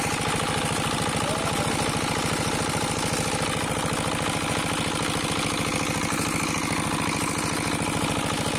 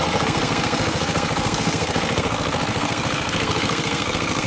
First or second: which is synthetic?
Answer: second